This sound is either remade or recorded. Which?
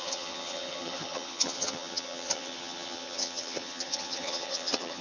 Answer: remade